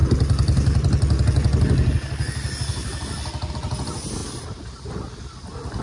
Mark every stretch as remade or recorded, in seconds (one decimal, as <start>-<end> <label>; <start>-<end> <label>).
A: 0.0-5.8 recorded